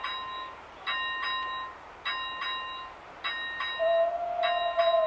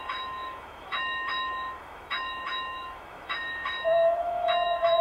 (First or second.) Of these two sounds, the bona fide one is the first